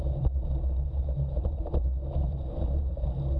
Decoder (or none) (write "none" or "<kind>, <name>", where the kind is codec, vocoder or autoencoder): vocoder, BigVGAN v2